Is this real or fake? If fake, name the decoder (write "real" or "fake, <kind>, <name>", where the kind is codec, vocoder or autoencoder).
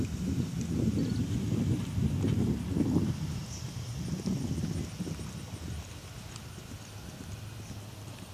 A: real